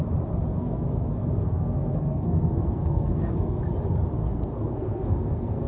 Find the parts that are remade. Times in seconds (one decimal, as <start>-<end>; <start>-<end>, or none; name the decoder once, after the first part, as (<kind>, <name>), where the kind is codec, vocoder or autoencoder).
0.5-3.6 (codec, SNAC); 4.2-5.7